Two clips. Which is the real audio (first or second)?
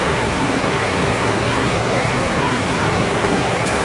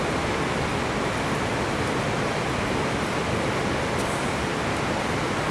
second